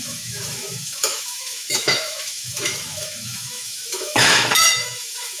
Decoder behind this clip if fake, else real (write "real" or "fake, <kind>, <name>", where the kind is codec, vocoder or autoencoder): fake, autoencoder, DAC-VAE